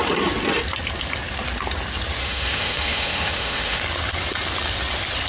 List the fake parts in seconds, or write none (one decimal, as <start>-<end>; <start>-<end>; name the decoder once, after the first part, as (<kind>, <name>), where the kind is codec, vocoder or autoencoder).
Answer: 2.2-3.8 (autoencoder, DAC-VAE)